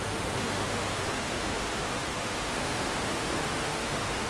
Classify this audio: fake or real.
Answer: fake